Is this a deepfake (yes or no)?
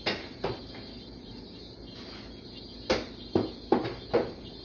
no